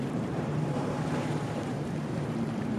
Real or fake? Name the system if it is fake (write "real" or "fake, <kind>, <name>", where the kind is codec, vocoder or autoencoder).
fake, vocoder, BigVGAN v2